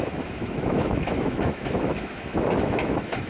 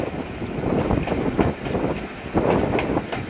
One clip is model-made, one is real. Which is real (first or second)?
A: second